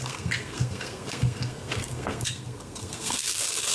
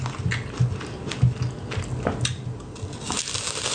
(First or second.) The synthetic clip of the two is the first